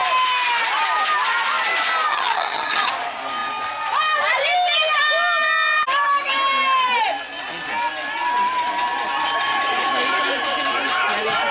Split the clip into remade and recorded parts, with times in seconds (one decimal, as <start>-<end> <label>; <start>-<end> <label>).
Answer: 0.0-2.1 recorded; 2.1-2.9 remade; 2.9-11.5 recorded